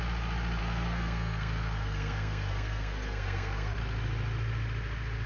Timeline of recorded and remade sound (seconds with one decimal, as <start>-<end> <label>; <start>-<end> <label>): 0.0-0.6 recorded; 0.6-3.8 remade; 3.8-5.3 recorded